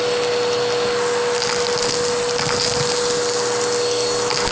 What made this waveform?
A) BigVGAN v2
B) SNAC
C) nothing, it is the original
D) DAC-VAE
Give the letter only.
C